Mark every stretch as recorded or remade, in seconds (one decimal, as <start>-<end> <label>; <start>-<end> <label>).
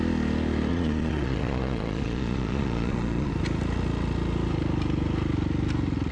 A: 0.0-0.7 recorded; 0.7-3.3 remade; 3.3-6.1 recorded